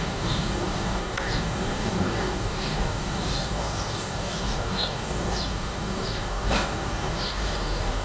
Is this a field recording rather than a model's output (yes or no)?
no